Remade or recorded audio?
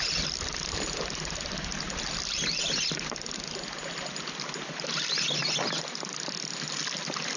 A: recorded